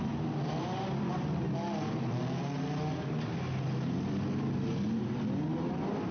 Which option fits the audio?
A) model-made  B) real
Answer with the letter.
B